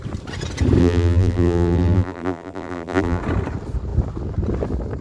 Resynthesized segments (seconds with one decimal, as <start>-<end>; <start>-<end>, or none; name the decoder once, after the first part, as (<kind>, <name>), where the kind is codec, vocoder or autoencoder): 0.8-3.2 (vocoder, BigVGAN v2)